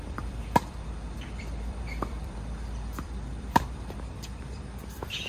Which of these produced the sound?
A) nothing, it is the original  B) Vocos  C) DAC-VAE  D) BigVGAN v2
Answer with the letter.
D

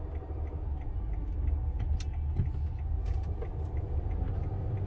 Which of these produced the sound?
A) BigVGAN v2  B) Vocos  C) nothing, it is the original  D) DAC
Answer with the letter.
C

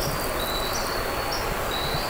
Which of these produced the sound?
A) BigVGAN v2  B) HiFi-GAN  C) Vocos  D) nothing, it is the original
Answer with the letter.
D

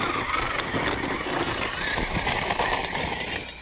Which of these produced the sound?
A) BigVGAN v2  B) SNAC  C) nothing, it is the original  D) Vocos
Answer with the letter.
C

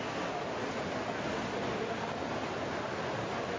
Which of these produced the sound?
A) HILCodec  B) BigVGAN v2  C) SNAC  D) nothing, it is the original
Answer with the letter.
D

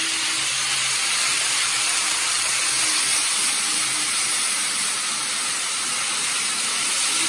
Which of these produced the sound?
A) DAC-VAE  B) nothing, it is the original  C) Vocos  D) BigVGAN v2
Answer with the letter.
B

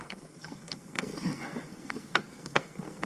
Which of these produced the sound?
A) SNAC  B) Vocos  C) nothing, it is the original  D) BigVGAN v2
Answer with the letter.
A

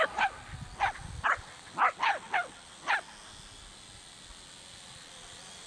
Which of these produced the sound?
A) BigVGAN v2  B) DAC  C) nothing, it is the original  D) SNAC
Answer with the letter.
C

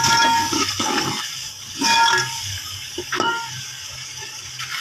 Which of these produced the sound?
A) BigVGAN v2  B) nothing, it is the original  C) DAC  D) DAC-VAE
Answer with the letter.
C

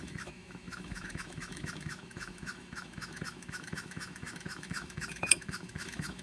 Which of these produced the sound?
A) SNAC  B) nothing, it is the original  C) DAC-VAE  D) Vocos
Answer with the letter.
C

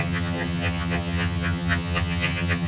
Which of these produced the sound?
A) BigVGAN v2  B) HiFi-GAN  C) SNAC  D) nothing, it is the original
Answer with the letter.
B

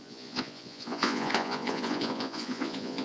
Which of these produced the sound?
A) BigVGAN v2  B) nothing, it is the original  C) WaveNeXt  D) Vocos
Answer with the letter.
D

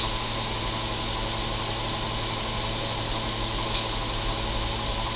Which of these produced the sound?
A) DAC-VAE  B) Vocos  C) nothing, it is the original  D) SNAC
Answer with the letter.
C